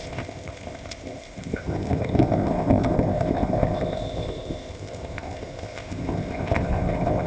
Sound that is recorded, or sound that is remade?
remade